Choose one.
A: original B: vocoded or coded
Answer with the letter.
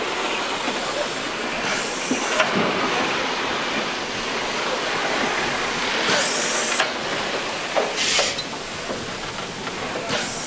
A